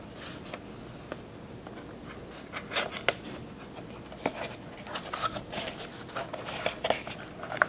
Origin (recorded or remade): recorded